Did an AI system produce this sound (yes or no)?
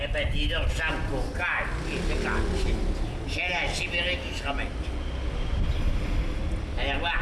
no